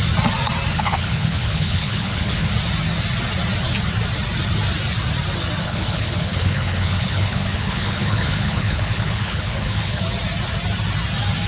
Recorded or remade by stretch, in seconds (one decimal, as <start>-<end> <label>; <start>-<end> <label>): 0.0-0.7 recorded; 0.7-2.5 remade; 2.5-5.6 recorded; 5.6-10.0 remade; 10.0-11.5 recorded